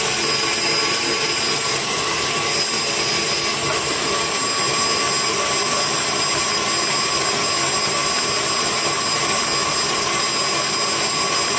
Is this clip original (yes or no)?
yes